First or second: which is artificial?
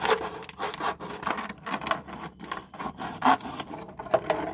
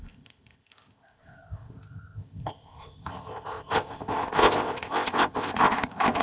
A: second